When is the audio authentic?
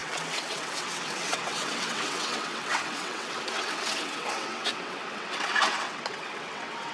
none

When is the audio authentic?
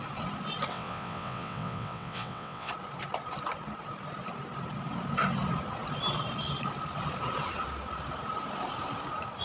0.0-0.7; 2.7-9.4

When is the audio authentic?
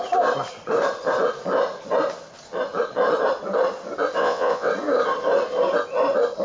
0.0-4.2; 4.7-6.4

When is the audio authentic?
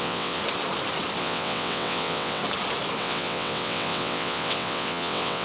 0.4-1.2; 2.4-3.0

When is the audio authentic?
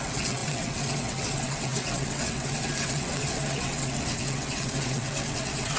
none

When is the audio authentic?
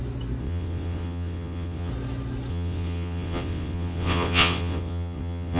0.0-0.4; 1.9-2.5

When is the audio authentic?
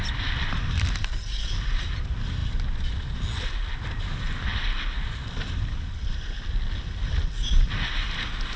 0.0-8.6